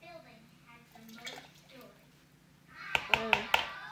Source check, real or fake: real